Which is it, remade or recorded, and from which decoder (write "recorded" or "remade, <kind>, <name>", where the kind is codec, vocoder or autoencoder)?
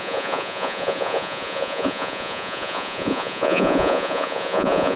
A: remade, vocoder, Vocos